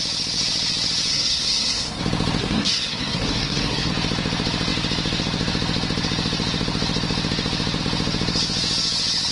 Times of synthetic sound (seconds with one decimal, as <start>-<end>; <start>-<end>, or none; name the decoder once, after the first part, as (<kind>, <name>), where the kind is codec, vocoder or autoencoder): 1.1-2.0 (codec, SNAC); 2.4-3.9